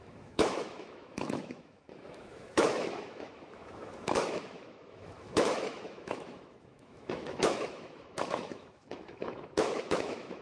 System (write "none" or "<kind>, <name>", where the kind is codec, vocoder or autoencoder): autoencoder, DAC-VAE